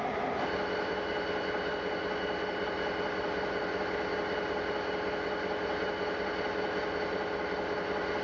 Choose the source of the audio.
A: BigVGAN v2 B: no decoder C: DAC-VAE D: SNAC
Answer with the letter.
B